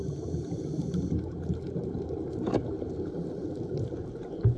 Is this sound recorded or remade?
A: recorded